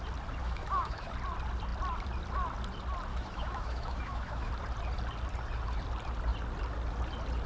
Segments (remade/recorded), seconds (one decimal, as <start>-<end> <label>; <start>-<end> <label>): 0.0-0.4 recorded; 0.4-1.1 remade; 1.1-3.1 recorded; 3.1-4.5 remade; 4.5-7.5 recorded